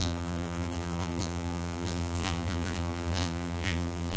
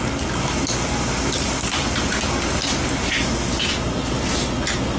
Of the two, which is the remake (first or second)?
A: first